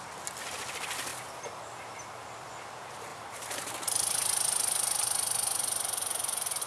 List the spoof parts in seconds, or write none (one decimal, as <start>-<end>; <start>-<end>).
1.1-2.5